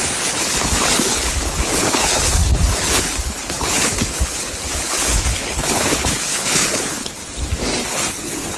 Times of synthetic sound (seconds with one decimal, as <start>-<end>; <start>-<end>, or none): 0.0-7.2; 8.1-8.6